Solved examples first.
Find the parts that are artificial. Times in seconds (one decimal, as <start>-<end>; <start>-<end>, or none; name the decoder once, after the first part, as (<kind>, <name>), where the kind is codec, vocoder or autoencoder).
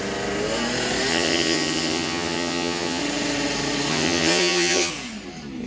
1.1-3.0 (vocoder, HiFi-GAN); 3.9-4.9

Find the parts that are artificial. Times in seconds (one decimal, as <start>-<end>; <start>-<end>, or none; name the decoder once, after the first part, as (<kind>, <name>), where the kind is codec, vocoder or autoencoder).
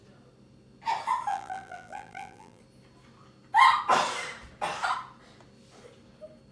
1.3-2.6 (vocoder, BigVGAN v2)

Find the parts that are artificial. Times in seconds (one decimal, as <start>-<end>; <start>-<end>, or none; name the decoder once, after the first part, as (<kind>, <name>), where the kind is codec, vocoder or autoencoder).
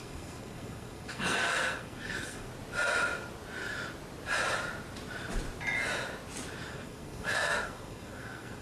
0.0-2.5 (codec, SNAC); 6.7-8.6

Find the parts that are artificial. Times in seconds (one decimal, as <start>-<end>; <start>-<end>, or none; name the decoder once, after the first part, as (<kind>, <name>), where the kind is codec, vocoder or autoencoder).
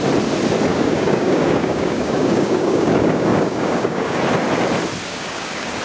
0.7-4.2 (codec, DAC); 5.1-5.8